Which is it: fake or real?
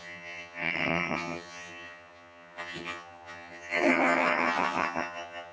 fake